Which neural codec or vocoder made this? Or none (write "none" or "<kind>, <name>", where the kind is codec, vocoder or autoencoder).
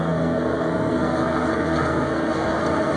codec, SNAC